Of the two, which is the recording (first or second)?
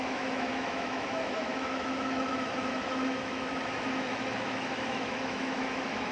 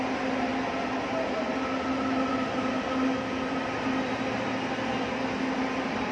second